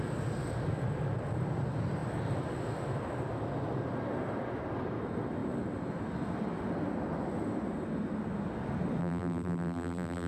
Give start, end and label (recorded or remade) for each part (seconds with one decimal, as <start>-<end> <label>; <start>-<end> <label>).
0.0-9.0 recorded; 9.0-10.3 remade